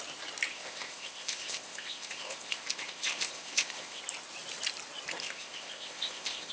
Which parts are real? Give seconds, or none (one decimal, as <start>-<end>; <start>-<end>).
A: 0.0-0.5; 4.0-5.2